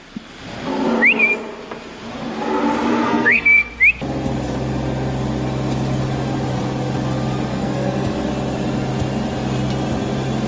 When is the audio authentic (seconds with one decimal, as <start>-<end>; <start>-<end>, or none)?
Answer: 0.0-2.9; 3.7-7.5; 8.1-10.5